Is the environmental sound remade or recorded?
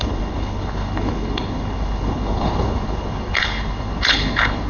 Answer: remade